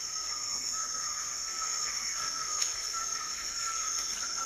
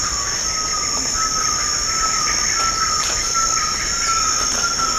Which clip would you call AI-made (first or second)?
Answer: first